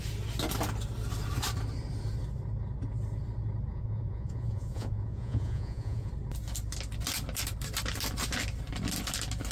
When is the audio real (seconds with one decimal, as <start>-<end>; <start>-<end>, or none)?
0.0-3.7; 6.1-9.5